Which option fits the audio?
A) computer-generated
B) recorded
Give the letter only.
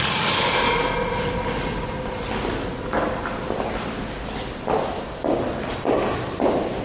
B